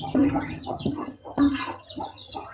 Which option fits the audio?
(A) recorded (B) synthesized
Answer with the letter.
B